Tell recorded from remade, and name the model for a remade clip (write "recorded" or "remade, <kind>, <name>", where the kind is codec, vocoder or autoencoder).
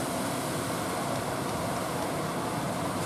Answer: recorded